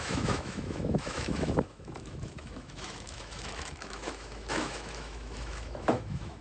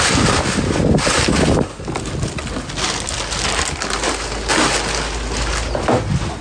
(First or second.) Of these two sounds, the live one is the second